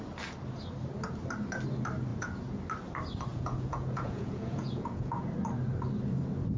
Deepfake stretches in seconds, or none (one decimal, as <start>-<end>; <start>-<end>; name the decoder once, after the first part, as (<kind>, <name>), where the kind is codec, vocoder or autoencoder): 2.1-2.6 (vocoder, Vocos); 3.3-5.3

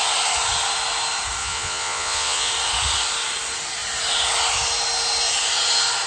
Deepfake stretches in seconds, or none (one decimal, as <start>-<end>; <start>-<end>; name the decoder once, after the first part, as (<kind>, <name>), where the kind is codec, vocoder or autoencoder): 1.4-2.5 (vocoder, Vocos)

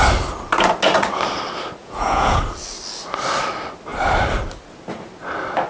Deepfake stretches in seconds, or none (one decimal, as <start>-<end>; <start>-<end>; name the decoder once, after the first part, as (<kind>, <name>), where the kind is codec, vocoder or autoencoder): 1.8-2.4 (vocoder, Vocos)

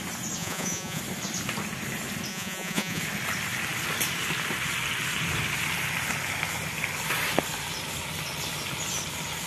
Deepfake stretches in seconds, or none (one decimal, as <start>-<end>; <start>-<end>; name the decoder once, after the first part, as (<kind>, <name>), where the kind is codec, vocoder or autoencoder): 0.4-1.0 (vocoder, Vocos); 2.3-3.0

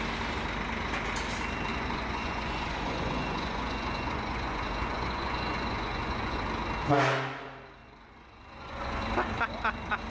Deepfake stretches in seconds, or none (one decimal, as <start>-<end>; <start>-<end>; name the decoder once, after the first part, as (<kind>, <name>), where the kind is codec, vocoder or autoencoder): 1.7-6.4 (vocoder, Vocos); 7.8-9.0

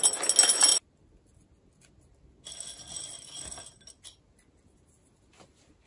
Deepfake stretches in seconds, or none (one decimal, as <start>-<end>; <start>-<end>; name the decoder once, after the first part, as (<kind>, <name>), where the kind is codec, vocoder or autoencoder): none

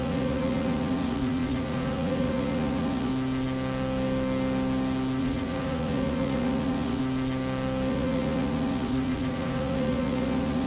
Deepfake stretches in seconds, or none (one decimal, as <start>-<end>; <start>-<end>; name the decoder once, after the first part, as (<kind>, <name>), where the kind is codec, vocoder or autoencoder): 0.0-3.1 (vocoder, Vocos); 5.2-7.0; 7.9-10.7